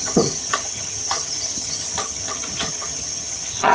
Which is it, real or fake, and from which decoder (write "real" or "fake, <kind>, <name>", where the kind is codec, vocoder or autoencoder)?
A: fake, vocoder, HiFi-GAN